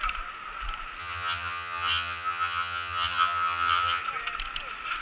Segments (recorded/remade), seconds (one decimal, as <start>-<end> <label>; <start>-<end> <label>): 0.0-1.0 recorded; 1.0-4.0 remade; 4.0-5.0 recorded